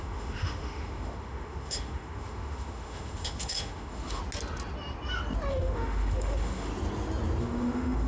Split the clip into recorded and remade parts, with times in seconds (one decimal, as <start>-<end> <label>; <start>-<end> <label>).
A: 0.0-4.2 remade; 4.2-5.5 recorded; 5.5-6.7 remade; 6.7-7.4 recorded; 7.4-8.1 remade